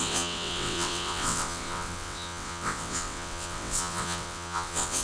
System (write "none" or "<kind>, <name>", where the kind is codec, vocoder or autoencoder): vocoder, WaveNeXt